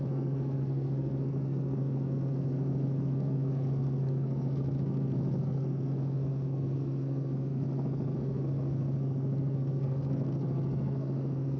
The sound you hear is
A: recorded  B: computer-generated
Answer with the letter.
B